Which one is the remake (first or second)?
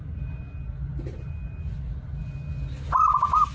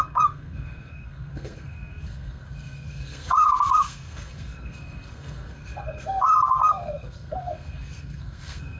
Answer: second